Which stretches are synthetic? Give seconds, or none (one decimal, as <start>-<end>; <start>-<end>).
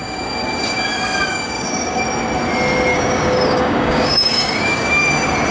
0.0-0.9; 1.3-2.0; 2.9-5.0